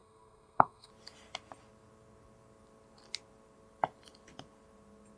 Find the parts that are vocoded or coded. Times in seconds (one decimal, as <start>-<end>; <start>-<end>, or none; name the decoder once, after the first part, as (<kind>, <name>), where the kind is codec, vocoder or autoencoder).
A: 0.0-0.9 (codec, SNAC)